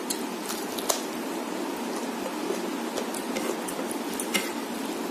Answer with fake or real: real